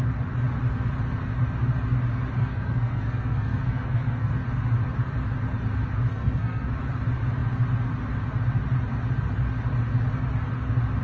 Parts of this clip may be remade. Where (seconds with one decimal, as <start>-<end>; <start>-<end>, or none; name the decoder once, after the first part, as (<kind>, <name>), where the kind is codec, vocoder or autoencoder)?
2.4-4.3 (codec, SNAC); 6.1-6.7